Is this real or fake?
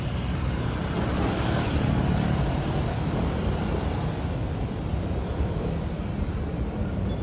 fake